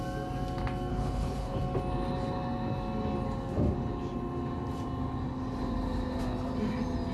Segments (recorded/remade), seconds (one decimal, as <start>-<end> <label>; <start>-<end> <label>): 0.0-0.9 recorded; 0.9-1.6 remade; 1.6-7.1 recorded